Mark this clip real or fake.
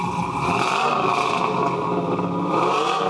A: real